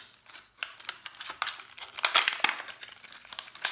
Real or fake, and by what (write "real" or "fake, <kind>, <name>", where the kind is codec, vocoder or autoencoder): real